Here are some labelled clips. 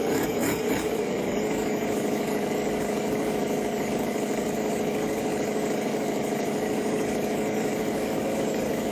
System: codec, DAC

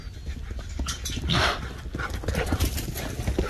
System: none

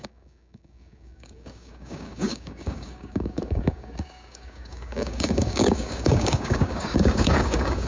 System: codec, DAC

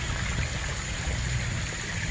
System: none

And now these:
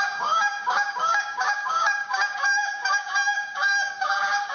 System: codec, DAC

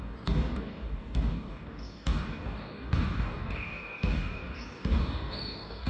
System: codec, DAC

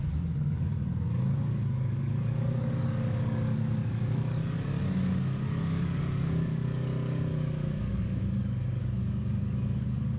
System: codec, DAC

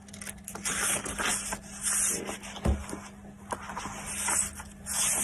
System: none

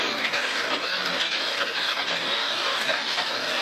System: codec, DAC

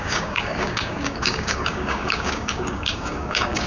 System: codec, DAC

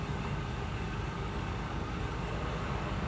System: codec, DAC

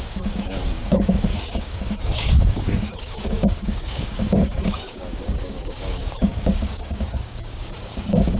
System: codec, DAC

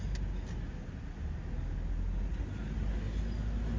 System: none